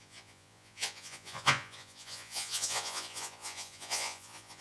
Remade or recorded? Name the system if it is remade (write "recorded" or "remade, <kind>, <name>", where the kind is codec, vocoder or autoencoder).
remade, vocoder, Vocos